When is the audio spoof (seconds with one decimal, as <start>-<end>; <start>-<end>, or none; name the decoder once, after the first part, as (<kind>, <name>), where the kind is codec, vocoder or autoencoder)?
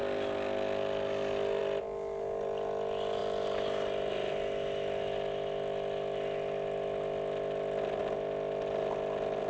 none